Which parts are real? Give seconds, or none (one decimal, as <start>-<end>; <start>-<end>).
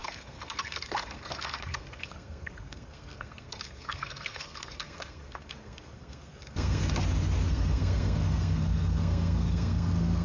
7.0-7.5